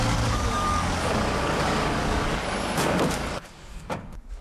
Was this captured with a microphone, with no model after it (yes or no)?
no